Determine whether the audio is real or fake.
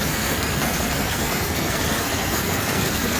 fake